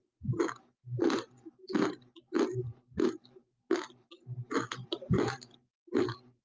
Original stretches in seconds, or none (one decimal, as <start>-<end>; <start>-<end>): 0.0-6.4